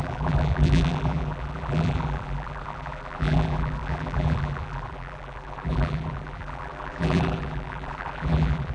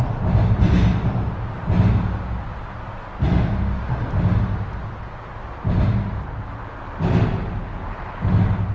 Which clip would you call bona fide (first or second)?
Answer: second